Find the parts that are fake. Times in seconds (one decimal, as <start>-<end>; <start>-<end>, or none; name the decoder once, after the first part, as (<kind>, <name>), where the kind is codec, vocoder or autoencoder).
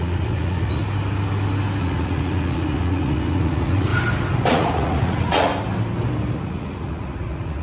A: 0.0-0.8 (vocoder, Vocos); 1.8-3.9; 4.5-5.5; 6.3-7.6